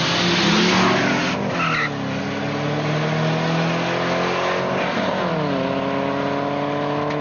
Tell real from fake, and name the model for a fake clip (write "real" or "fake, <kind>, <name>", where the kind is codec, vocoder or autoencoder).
real